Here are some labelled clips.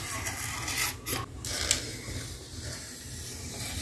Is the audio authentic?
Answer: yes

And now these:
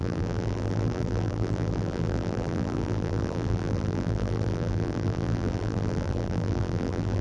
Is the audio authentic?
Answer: no